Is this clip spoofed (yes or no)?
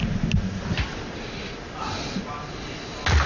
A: no